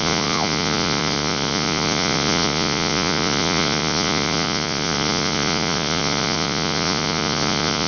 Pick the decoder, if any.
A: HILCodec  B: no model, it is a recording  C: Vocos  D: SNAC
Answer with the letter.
C